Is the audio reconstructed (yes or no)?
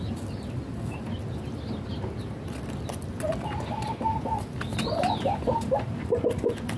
no